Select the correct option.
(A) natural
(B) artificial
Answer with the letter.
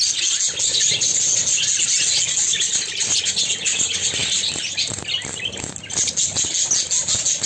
A